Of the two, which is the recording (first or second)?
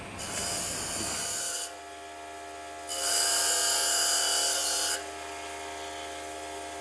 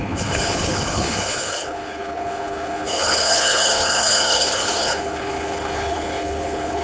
first